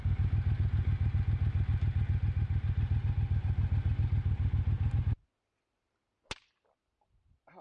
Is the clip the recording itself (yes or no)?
yes